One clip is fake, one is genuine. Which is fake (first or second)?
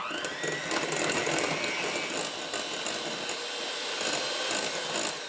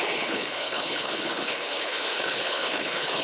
second